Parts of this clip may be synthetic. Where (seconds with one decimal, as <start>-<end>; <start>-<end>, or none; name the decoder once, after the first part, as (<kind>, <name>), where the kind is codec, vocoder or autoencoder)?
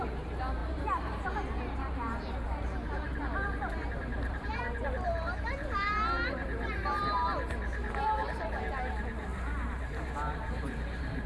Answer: 0.0-11.3 (vocoder, BigVGAN v2)